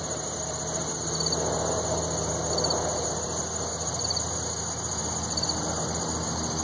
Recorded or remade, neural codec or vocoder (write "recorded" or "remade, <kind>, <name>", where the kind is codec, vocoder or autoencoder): recorded